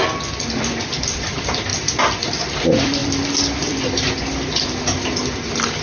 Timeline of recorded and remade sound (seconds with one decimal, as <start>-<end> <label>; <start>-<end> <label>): 0.0-5.8 remade